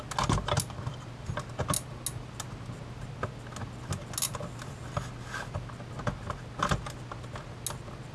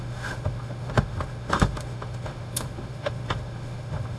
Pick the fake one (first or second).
second